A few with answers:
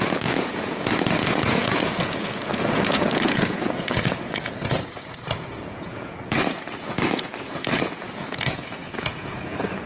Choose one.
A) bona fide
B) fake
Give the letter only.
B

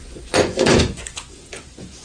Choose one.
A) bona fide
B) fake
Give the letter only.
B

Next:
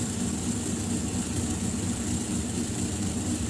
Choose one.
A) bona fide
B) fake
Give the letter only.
A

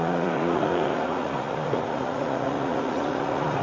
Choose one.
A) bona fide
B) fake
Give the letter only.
B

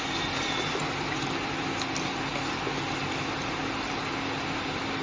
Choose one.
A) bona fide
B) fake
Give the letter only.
A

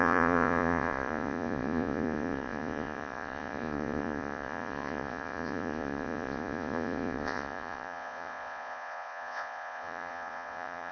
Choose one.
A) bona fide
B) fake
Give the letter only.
B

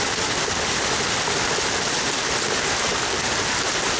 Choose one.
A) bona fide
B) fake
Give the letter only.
A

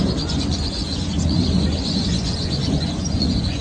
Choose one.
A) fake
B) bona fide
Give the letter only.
A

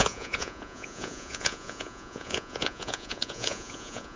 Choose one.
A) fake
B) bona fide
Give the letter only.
A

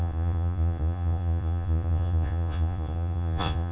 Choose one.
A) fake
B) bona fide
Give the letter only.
A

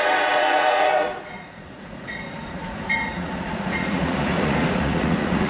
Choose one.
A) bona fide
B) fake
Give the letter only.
B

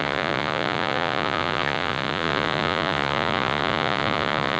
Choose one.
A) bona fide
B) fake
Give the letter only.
B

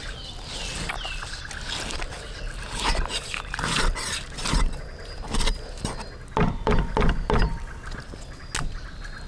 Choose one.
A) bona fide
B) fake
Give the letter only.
A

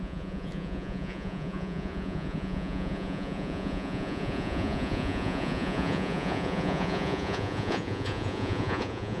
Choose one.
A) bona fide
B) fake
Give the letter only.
B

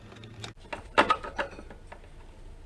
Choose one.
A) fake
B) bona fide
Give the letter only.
B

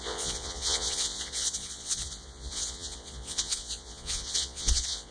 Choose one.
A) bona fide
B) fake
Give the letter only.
B